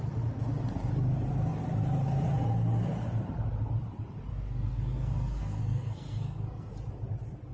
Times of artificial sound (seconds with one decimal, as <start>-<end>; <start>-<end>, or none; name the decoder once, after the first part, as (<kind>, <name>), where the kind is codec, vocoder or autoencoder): 4.3-6.7 (codec, SNAC)